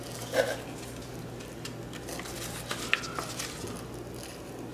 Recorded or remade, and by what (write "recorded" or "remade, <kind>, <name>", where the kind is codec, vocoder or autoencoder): recorded